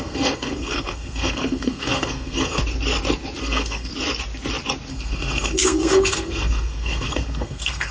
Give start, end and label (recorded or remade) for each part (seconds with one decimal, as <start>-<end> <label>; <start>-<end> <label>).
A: 0.0-2.6 remade; 2.6-3.4 recorded; 3.4-3.9 remade; 3.9-4.9 recorded; 4.9-7.9 remade